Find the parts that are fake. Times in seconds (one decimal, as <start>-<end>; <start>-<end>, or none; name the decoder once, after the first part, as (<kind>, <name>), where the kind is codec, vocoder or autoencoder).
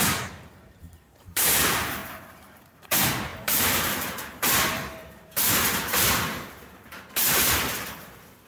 0.0-8.5 (vocoder, BigVGAN v2)